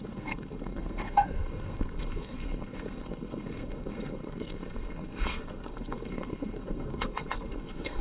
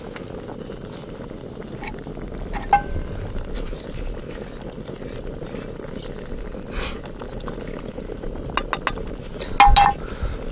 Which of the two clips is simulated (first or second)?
first